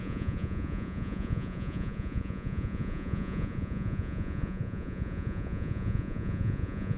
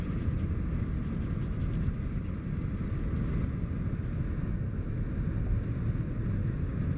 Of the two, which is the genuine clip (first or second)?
second